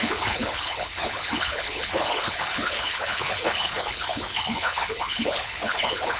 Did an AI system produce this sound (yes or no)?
yes